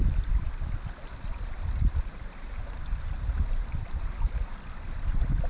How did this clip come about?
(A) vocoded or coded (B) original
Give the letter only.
A